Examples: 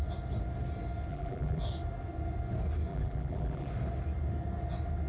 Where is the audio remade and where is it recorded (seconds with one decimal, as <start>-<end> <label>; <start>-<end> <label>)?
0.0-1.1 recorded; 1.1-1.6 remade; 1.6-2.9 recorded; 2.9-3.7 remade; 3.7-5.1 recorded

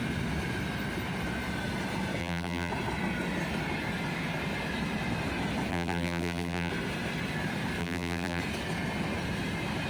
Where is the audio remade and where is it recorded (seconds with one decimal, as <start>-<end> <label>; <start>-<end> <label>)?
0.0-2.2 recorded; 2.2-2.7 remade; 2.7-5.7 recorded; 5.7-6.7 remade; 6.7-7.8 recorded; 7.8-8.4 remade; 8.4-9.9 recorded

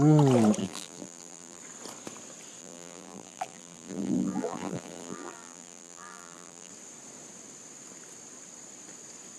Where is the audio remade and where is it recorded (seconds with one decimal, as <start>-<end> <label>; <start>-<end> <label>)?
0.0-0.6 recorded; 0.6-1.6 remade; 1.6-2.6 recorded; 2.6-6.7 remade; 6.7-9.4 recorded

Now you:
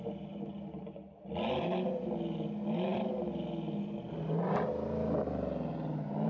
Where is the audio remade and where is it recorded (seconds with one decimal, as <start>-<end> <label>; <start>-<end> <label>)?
0.0-6.3 recorded